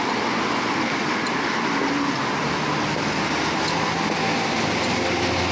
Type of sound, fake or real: real